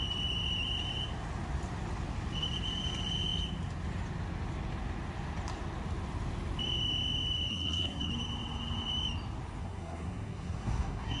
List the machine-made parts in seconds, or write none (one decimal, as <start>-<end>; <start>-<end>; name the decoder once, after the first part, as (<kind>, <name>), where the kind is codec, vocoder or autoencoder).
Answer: 7.5-8.1 (codec, SNAC); 9.6-11.2